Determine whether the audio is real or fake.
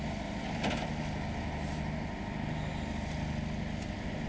real